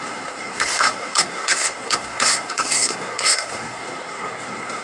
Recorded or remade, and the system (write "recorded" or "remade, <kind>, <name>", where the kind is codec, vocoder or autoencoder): remade, codec, SNAC